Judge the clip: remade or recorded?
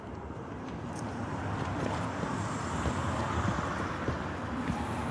remade